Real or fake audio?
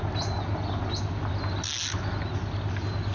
real